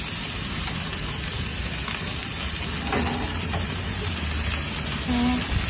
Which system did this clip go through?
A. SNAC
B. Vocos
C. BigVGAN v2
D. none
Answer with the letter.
D